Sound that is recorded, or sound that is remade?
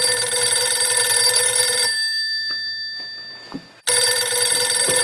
remade